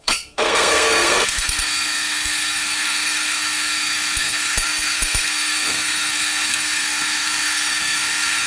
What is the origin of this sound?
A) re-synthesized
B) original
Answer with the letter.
A